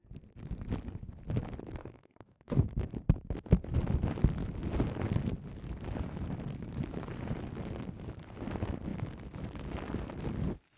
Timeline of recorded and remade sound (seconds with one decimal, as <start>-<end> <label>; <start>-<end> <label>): 0.0-1.8 recorded; 1.8-2.9 remade; 2.9-10.8 recorded